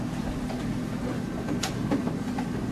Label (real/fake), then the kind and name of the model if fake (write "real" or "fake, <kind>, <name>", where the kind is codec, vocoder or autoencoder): real